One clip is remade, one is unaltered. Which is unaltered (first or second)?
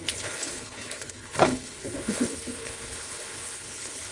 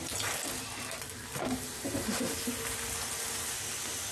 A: second